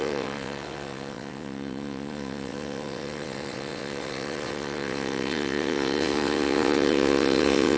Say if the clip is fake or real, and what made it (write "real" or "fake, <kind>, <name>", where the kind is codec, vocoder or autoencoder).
fake, vocoder, WaveNeXt